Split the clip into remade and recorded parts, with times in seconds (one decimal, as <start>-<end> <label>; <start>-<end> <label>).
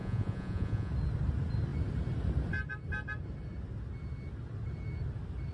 0.0-0.9 remade; 0.9-5.5 recorded